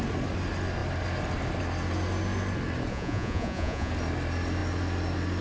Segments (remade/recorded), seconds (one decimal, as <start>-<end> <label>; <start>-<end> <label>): 0.0-2.9 recorded; 2.9-3.9 remade; 3.9-5.4 recorded